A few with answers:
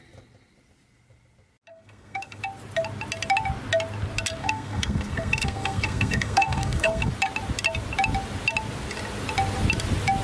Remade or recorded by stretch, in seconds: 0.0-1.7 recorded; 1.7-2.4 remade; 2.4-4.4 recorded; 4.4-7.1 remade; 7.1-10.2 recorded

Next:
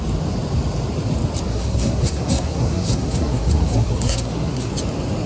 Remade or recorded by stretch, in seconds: 0.0-1.5 recorded; 1.5-4.7 remade; 4.7-5.3 recorded

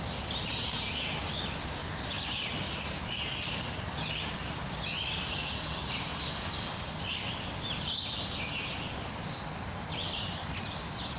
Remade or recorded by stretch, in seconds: 0.0-1.8 recorded; 1.8-3.6 remade; 3.6-6.1 recorded; 6.1-8.0 remade; 8.0-11.2 recorded